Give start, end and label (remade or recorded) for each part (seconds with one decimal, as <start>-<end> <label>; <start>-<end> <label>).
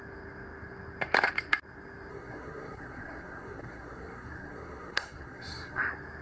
0.0-2.1 recorded; 2.1-5.8 remade; 5.8-6.2 recorded